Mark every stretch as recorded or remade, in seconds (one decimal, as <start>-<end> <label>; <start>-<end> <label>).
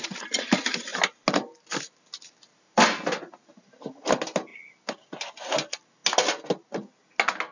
0.0-4.5 recorded; 4.5-5.1 remade; 5.1-7.5 recorded